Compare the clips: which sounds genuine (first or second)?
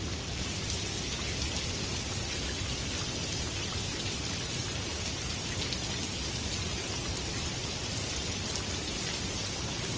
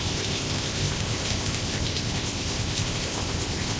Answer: first